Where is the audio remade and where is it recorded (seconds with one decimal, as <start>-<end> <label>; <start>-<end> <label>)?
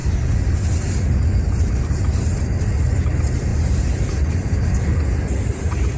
0.0-6.0 recorded